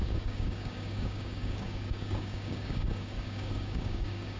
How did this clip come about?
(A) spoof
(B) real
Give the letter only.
A